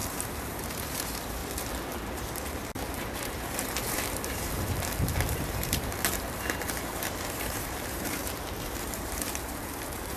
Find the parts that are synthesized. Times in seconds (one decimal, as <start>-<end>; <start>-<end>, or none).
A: 0.0-1.4; 2.0-10.2